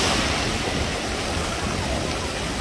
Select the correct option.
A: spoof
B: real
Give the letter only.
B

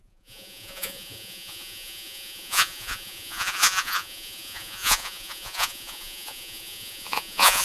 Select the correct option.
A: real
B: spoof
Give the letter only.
B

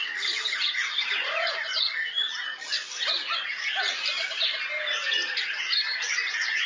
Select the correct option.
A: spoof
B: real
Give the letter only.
B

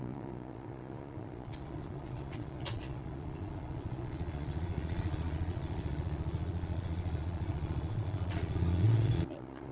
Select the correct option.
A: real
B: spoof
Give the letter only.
B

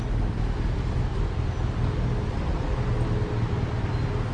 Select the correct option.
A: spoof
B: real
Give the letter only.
B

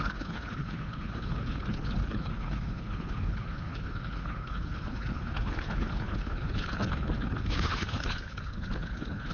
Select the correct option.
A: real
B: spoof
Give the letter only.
B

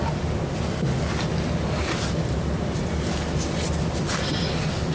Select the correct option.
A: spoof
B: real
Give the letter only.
B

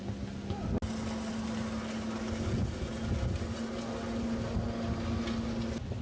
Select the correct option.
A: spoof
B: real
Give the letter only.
B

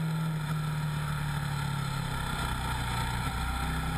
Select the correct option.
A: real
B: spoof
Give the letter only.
A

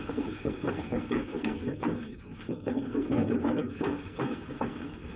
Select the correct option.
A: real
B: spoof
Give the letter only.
B